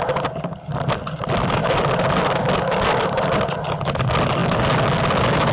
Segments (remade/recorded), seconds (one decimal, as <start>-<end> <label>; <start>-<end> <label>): 0.0-5.5 recorded